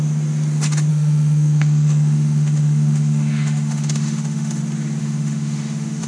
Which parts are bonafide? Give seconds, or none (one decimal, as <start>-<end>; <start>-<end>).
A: 0.0-0.9; 4.6-5.0